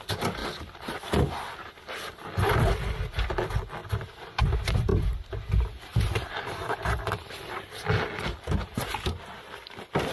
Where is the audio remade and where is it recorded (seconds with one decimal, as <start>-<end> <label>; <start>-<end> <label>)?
0.0-10.1 recorded